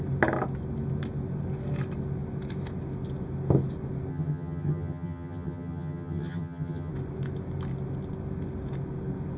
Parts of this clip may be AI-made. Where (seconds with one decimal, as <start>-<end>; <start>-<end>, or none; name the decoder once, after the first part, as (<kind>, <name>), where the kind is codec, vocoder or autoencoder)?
4.1-6.9 (vocoder, HiFi-GAN)